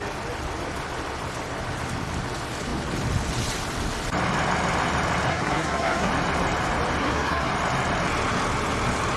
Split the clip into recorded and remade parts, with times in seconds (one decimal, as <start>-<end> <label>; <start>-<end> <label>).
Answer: 0.0-5.3 recorded; 5.3-6.1 remade; 6.1-7.0 recorded; 7.0-7.5 remade; 7.5-9.2 recorded